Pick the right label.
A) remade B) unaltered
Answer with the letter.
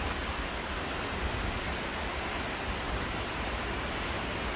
B